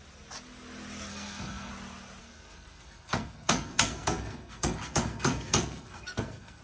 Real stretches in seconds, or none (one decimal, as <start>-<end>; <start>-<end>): 0.0-1.1; 1.7-2.2